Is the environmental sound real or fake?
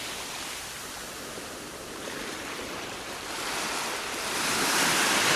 fake